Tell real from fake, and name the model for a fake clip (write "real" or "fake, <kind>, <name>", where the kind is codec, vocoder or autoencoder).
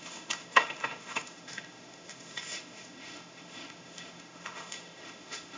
fake, autoencoder, DAC-VAE